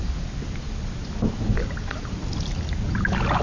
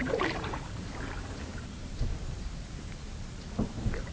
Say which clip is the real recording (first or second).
first